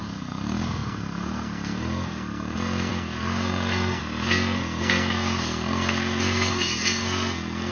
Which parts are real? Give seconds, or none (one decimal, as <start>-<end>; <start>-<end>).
none